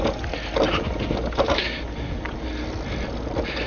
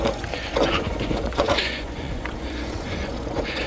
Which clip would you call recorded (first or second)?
first